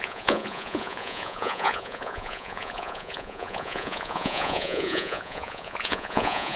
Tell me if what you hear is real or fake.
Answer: fake